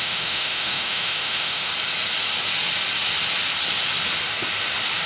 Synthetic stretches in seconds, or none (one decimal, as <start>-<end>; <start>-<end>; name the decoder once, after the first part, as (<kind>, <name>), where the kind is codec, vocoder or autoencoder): 0.0-1.7 (autoencoder, DAC-VAE)